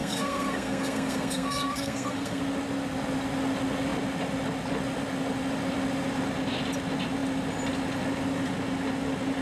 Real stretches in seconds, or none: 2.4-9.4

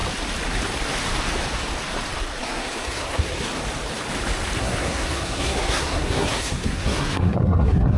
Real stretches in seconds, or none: 0.0-2.4; 3.5-4.6

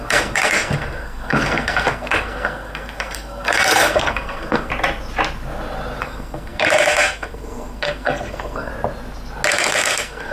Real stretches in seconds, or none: 4.7-6.0; 8.7-9.5

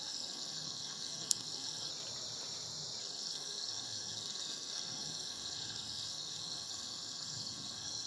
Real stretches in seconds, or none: 1.9-3.0

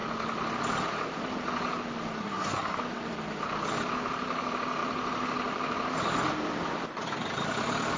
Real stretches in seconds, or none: 0.0-2.2; 2.8-8.0

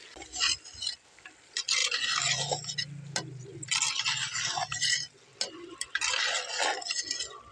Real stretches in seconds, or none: 0.0-7.5

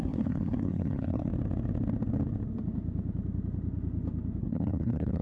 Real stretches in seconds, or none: 1.3-4.4